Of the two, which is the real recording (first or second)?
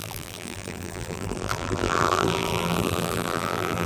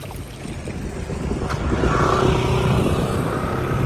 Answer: second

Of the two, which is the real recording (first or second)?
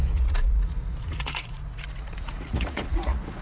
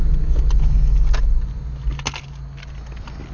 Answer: second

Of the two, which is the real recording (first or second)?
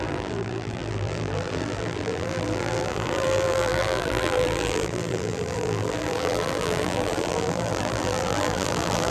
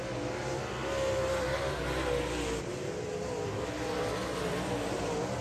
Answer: second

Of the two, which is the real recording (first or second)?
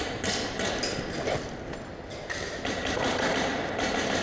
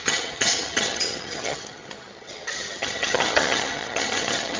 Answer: first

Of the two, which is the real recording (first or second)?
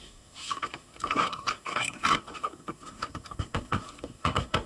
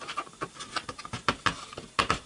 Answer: second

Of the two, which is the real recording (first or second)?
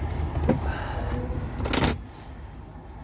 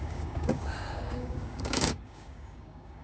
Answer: first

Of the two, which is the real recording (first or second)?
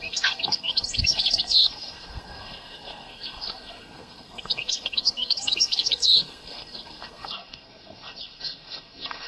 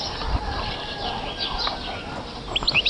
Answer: second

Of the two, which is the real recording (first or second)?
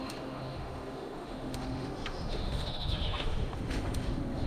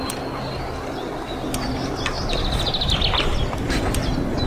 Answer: second